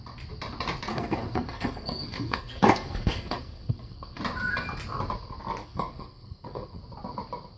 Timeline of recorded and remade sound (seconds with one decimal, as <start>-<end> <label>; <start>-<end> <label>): 0.0-0.9 recorded; 0.9-4.2 remade; 4.2-5.6 recorded; 5.6-6.8 remade; 6.8-7.6 recorded